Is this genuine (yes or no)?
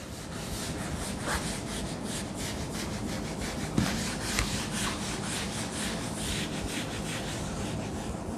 yes